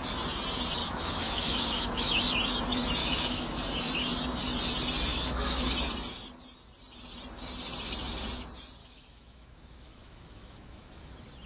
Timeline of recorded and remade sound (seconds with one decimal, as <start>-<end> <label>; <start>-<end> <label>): 0.0-0.8 recorded; 0.8-2.2 remade; 2.2-3.0 recorded; 3.0-3.6 remade; 3.6-5.1 recorded; 5.1-5.7 remade; 5.7-8.8 recorded; 8.8-11.1 remade; 11.1-11.5 recorded